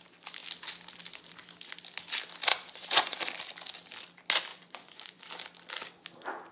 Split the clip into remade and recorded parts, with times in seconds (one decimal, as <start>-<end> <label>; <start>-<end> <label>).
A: 0.0-2.5 recorded; 2.5-3.2 remade; 3.2-4.5 recorded; 4.5-5.2 remade; 5.2-6.5 recorded